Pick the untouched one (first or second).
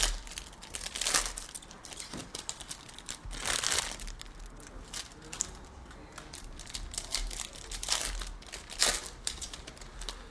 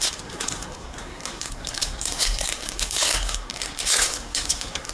first